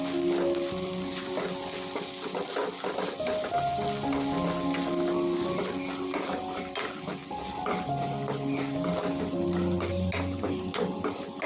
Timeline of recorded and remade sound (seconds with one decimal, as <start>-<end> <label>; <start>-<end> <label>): 0.0-11.5 recorded